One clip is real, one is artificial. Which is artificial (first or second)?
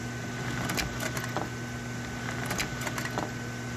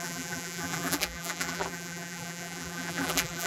second